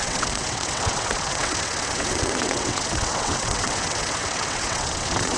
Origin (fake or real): fake